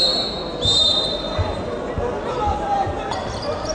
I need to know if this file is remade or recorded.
recorded